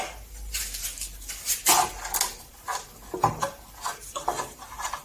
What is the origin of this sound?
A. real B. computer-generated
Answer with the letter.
A